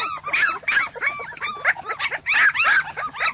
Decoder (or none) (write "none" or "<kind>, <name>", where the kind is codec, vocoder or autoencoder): none